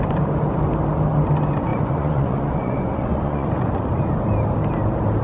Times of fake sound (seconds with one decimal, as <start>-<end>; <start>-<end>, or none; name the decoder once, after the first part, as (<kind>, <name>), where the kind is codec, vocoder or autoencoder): 1.7-3.9 (vocoder, Vocos)